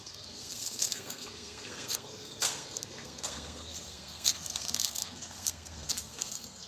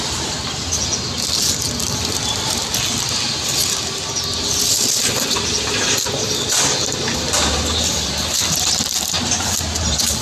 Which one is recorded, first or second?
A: second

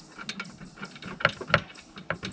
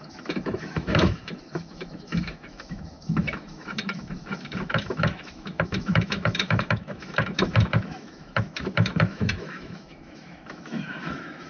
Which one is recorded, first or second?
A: first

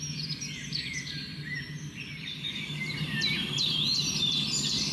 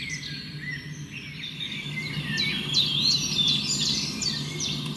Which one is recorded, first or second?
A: second